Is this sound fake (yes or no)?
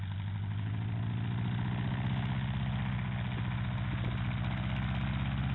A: no